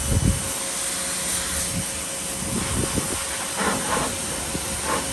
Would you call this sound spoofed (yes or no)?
no